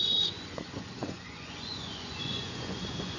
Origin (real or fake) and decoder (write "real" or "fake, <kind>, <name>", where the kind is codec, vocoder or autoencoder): fake, vocoder, Vocos